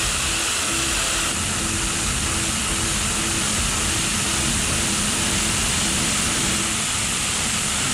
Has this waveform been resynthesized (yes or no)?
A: no